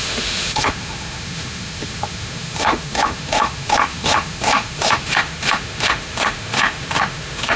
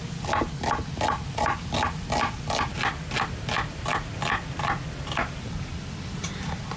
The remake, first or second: first